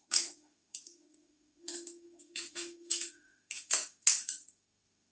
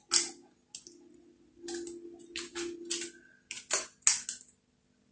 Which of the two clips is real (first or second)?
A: second